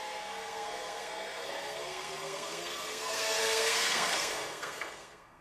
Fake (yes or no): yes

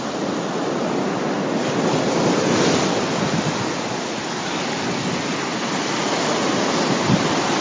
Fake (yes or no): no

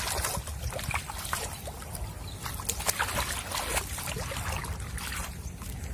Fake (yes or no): no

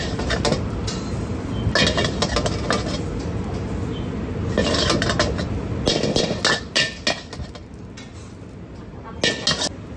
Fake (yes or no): no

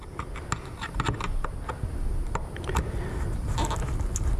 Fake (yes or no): no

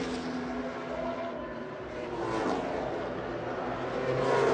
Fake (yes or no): no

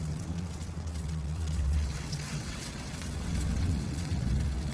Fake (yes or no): yes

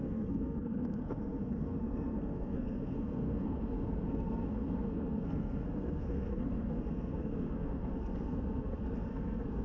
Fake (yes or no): yes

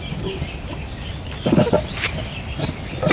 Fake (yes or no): no